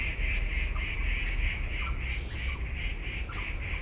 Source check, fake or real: real